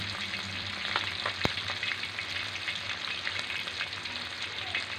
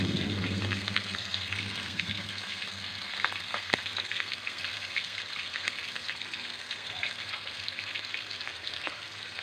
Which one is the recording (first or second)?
first